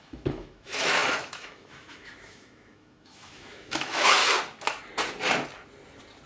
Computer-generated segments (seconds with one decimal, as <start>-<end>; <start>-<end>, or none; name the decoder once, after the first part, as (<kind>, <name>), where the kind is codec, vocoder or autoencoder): 0.0-4.2 (autoencoder, DAC-VAE)